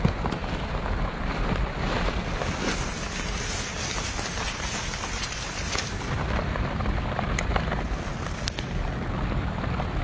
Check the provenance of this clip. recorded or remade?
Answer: recorded